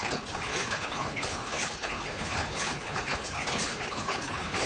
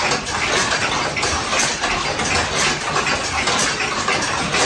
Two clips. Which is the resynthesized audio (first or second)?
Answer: first